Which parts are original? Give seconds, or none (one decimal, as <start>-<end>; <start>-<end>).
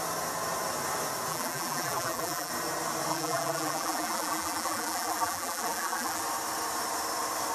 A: 0.0-1.3; 2.5-3.1; 6.2-7.5